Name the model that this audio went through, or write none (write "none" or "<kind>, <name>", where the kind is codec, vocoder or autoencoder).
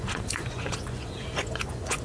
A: vocoder, Vocos